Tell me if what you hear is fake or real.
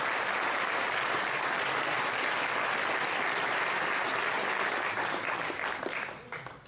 real